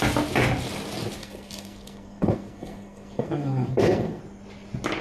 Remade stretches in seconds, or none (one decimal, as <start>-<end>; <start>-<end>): 1.2-4.2